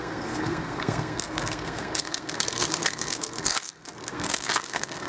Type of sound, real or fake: fake